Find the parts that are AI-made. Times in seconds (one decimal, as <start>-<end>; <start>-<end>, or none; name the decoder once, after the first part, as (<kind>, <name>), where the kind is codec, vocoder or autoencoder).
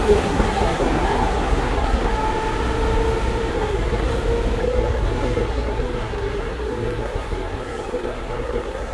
0.0-2.1 (codec, SNAC); 3.5-4.1; 4.6-8.9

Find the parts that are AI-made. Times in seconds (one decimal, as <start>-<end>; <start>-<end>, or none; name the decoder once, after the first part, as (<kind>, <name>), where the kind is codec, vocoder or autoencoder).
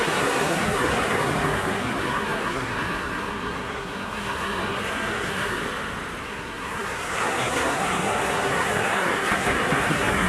0.0-5.6 (codec, SNAC); 6.2-10.3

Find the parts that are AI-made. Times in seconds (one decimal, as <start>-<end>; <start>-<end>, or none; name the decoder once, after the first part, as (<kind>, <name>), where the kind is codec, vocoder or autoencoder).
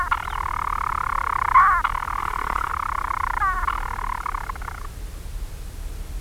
2.2-2.7 (codec, SNAC)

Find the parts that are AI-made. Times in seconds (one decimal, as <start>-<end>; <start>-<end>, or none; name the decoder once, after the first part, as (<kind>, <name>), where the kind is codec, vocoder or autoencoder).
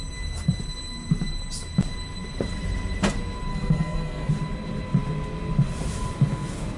3.5-4.3 (codec, SNAC)